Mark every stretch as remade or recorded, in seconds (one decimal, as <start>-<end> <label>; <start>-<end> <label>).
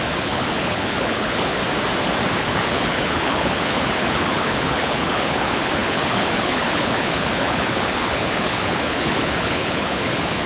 0.0-1.6 remade; 1.6-2.4 recorded; 2.4-10.5 remade